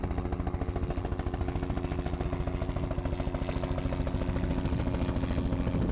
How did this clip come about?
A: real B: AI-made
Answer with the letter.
A